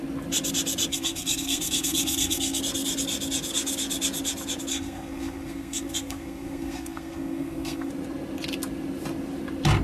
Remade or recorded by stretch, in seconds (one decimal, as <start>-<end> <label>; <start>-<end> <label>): 0.0-0.9 recorded; 0.9-2.6 remade; 2.6-4.7 recorded; 4.7-7.9 remade; 7.9-9.8 recorded